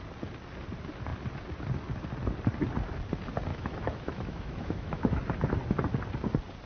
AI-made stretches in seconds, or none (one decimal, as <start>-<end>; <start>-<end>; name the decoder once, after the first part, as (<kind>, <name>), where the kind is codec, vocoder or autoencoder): 3.5-5.2 (autoencoder, DAC-VAE)